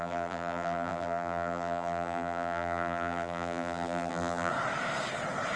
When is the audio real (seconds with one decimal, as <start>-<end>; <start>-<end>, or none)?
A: 4.5-5.6